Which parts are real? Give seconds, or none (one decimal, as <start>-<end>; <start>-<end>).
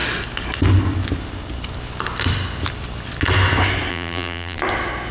0.0-3.9; 4.6-5.1